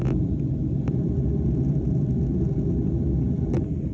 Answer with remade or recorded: remade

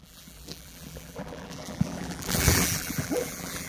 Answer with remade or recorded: remade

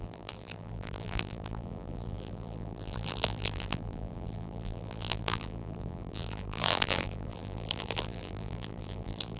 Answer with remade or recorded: remade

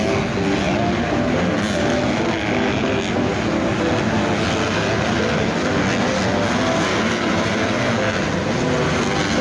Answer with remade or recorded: recorded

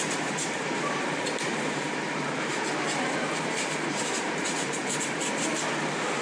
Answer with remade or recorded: remade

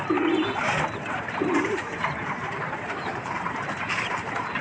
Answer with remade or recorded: remade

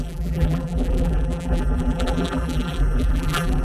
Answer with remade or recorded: remade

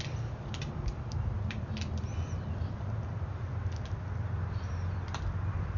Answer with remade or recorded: remade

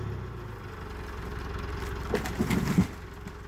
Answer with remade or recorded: recorded